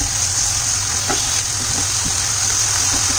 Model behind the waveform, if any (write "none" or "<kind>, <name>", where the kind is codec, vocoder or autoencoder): none